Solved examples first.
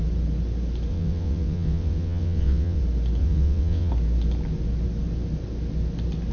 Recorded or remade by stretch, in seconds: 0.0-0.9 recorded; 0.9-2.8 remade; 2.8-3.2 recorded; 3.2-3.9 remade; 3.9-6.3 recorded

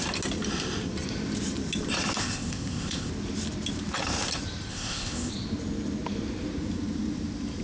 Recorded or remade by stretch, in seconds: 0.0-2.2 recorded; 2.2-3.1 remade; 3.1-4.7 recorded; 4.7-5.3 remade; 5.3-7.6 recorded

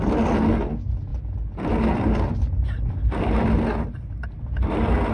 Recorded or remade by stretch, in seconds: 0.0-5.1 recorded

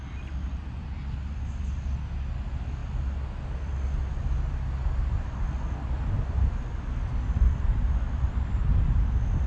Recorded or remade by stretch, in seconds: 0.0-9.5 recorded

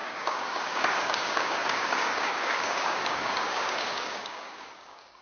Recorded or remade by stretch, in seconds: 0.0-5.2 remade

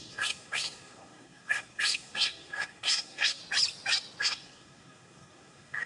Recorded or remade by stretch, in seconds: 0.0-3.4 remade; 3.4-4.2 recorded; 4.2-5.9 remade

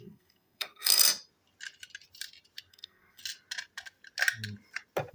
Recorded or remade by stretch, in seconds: 0.0-1.0 remade; 1.0-2.7 recorded; 2.7-3.2 remade; 3.2-5.1 recorded